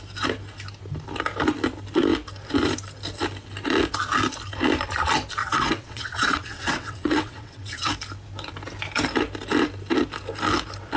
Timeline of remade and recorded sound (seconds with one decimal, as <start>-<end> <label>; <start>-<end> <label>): 0.0-5.4 recorded; 5.4-7.9 remade; 7.9-11.0 recorded